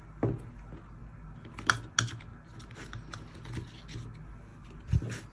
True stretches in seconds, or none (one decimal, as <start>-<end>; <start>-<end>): 0.0-5.3